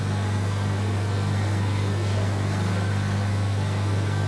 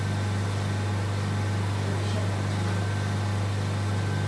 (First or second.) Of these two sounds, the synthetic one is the first